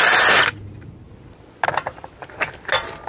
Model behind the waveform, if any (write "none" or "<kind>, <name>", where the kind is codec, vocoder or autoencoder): none